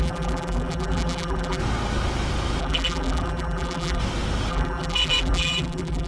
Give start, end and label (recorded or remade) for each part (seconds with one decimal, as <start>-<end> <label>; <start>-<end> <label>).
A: 0.0-1.6 remade; 1.6-2.6 recorded; 2.6-4.0 remade; 4.0-4.5 recorded; 4.5-6.1 remade